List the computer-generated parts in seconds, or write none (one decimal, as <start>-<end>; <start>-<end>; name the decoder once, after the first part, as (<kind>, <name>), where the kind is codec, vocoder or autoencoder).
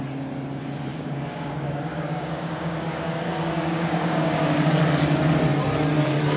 0.9-4.7 (codec, DAC)